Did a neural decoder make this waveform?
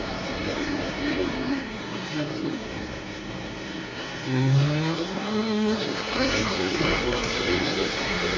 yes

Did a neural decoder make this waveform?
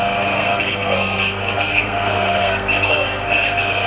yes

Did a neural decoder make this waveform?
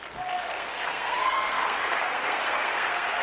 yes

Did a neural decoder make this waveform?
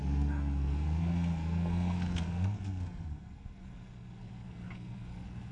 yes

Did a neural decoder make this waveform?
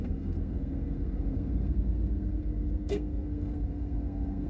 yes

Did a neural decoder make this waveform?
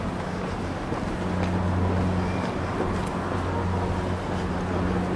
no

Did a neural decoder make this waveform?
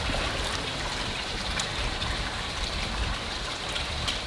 no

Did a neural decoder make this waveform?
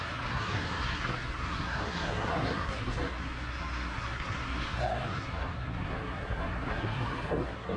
yes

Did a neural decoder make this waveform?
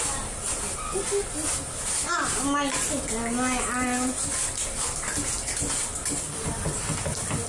no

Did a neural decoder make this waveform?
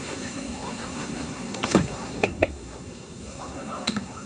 yes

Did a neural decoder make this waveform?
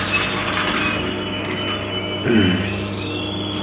no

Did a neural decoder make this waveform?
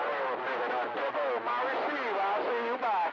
no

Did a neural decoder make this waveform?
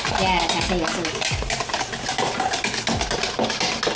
no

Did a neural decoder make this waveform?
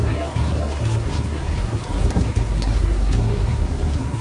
yes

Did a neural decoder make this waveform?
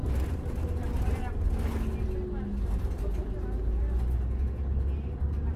no